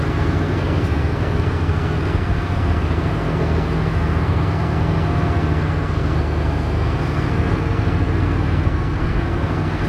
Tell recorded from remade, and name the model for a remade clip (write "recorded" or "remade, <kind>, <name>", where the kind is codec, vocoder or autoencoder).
remade, codec, SNAC